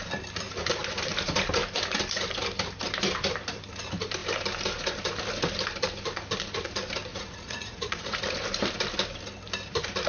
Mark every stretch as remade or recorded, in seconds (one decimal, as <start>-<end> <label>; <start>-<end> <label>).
0.0-7.1 recorded; 7.1-8.2 remade; 8.2-10.1 recorded